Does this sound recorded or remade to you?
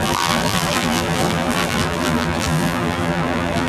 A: remade